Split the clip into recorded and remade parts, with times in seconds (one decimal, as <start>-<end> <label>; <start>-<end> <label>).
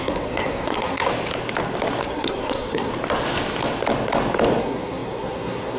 0.0-1.1 remade; 1.1-2.0 recorded; 2.0-2.9 remade; 2.9-4.6 recorded; 4.6-5.8 remade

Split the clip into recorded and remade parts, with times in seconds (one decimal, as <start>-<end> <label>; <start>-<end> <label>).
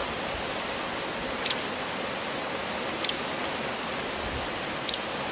0.0-5.3 recorded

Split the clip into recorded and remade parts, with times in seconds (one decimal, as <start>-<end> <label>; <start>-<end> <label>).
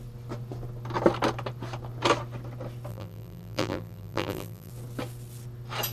0.0-2.9 recorded; 2.9-4.7 remade; 4.7-5.9 recorded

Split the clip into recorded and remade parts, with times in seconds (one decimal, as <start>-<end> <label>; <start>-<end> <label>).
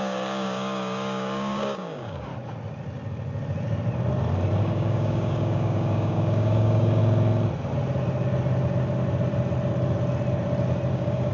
0.0-2.3 remade; 2.3-4.6 recorded; 4.6-7.0 remade; 7.0-10.9 recorded; 10.9-11.3 remade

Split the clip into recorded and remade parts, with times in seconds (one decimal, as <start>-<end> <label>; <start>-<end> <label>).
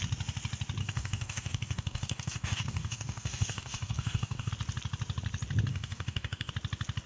0.0-0.8 recorded; 0.8-4.5 remade; 4.5-5.7 recorded; 5.7-6.5 remade; 6.5-7.1 recorded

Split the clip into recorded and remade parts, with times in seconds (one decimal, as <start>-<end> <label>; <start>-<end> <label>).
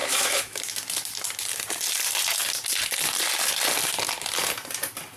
0.0-0.6 remade; 0.6-5.2 recorded